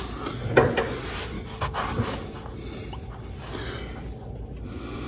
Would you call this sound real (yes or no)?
yes